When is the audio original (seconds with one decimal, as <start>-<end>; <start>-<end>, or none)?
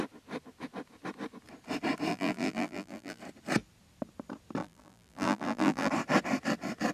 0.0-2.1; 3.2-4.6; 5.9-6.9